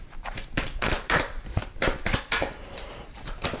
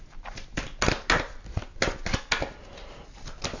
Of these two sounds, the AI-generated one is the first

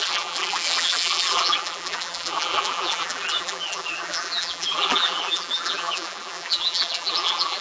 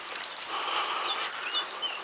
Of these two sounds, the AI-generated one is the first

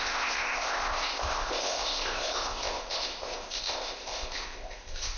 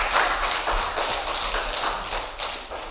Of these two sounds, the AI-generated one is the first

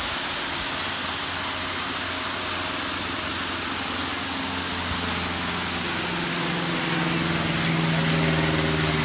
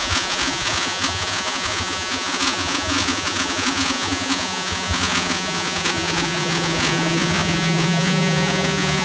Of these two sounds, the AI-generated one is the second